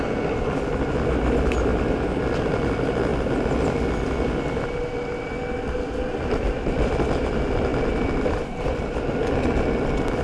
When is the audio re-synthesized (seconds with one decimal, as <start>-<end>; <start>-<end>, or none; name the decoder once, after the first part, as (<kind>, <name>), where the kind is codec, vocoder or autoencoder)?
none